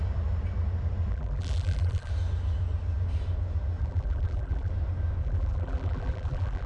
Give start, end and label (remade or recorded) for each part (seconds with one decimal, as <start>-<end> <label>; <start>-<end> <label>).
0.0-1.1 recorded; 1.1-2.1 remade; 2.1-3.8 recorded; 3.8-4.7 remade; 4.7-5.2 recorded; 5.2-6.7 remade